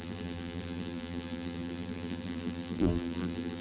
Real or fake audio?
fake